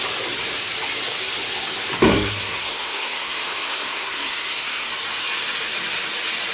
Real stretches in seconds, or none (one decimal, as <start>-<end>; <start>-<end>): 0.0-2.1; 4.9-6.5